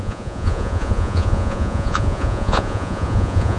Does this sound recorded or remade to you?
remade